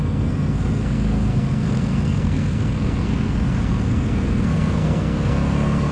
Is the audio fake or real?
fake